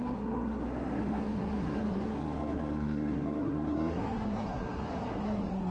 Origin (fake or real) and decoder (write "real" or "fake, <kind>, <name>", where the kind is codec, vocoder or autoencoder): fake, codec, SNAC